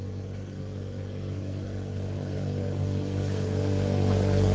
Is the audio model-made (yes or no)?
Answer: yes